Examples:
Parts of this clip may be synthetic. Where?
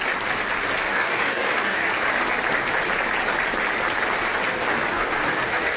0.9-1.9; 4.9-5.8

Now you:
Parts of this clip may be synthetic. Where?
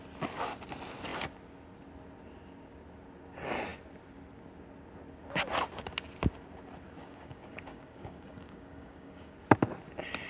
7.0-9.3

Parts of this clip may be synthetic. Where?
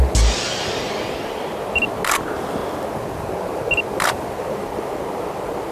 none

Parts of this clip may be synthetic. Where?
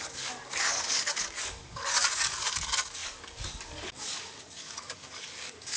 0.0-5.8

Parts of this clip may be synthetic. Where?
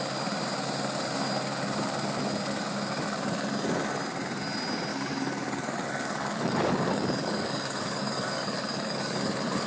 4.9-9.7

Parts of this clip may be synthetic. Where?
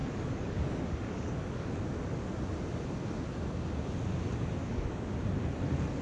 0.0-1.8; 4.6-5.1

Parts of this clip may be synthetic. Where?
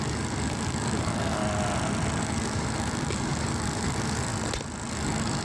0.0-1.4; 2.2-4.3; 4.9-5.4